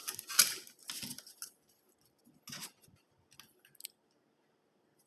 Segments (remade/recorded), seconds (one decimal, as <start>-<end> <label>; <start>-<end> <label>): 0.0-5.1 recorded